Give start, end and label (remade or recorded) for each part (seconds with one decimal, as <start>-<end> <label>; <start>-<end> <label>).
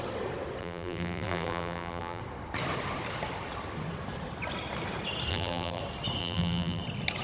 0.0-0.6 recorded; 0.6-2.2 remade; 2.2-5.3 recorded; 5.3-5.8 remade; 5.8-6.2 recorded; 6.2-6.8 remade; 6.8-7.2 recorded